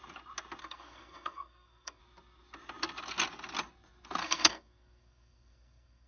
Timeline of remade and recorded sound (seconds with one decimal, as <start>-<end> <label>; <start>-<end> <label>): 0.0-0.6 recorded; 0.6-2.0 remade; 2.0-4.2 recorded; 4.2-6.1 remade